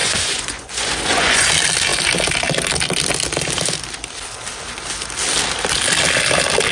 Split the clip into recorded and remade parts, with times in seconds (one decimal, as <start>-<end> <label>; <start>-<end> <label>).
0.0-1.5 remade; 1.5-6.7 recorded